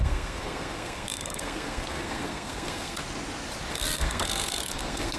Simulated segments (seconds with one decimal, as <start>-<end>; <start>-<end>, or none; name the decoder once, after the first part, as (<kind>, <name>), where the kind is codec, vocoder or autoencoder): 0.0-3.0 (codec, SNAC); 3.7-5.2